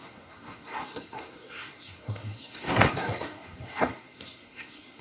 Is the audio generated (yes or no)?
yes